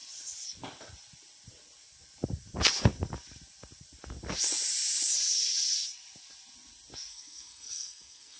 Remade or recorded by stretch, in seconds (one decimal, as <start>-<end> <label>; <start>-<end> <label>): 0.0-7.1 recorded; 7.1-8.4 remade